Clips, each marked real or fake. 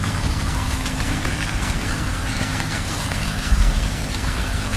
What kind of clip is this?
fake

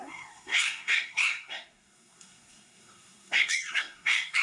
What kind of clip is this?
fake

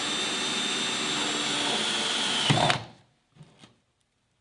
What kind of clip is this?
real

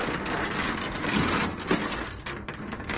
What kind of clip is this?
real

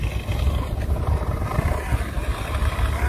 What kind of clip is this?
real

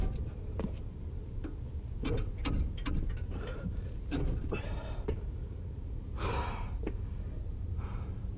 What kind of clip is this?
fake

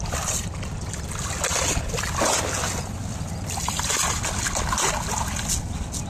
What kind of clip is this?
real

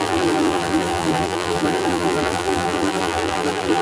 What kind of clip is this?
fake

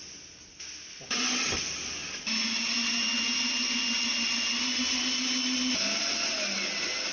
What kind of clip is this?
real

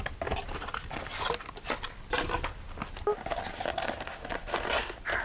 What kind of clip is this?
real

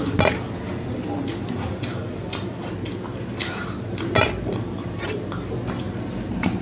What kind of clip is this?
real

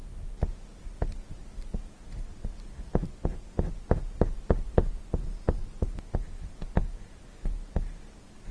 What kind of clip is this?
real